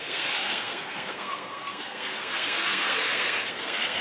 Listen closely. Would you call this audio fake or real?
fake